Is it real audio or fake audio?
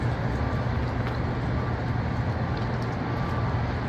real